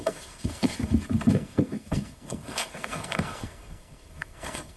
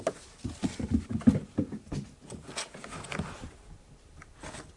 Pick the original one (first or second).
second